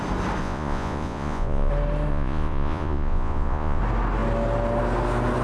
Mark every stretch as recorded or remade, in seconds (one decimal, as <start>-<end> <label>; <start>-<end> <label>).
0.0-0.4 recorded; 0.4-1.7 remade; 1.7-2.1 recorded; 2.1-3.8 remade; 3.8-5.4 recorded